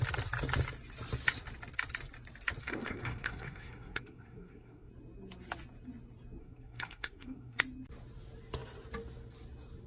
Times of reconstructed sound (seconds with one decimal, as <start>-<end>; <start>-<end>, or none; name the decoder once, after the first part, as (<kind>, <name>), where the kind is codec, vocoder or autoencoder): 2.6-4.9 (codec, SNAC); 6.4-7.6